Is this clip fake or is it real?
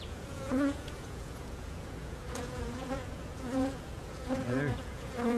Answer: fake